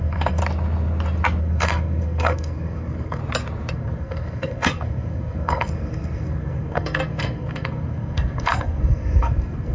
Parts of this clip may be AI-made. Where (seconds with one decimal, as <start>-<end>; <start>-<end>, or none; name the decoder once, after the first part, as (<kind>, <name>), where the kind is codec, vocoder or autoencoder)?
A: 0.0-0.4 (codec, SNAC); 1.4-3.2; 3.7-9.7